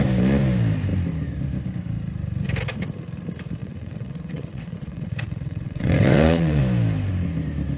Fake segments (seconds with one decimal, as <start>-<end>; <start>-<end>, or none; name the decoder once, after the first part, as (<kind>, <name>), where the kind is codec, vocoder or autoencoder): 3.6-6.6 (vocoder, WaveNeXt)

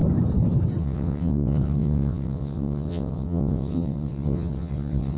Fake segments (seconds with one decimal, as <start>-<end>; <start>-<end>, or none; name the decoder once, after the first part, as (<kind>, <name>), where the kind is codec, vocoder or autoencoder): 0.8-5.2 (vocoder, WaveNeXt)